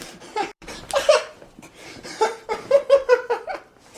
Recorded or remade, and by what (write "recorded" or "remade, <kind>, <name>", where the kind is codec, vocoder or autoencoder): remade, vocoder, BigVGAN v2